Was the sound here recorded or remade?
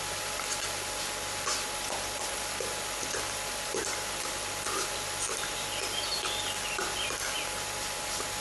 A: recorded